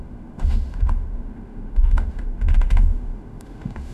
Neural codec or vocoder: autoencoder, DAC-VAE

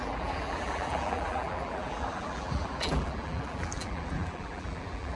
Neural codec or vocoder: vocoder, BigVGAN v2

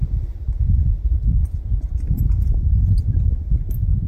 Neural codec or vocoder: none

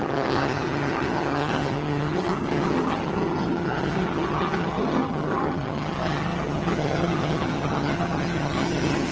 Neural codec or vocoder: vocoder, HiFi-GAN